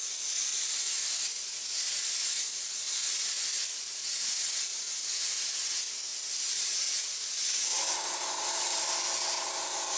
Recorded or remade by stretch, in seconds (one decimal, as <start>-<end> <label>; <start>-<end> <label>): 0.0-10.0 recorded